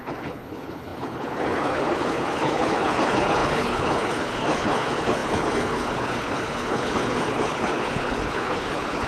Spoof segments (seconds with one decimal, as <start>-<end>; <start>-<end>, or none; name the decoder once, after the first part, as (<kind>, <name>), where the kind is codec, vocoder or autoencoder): 0.0-9.1 (codec, HILCodec)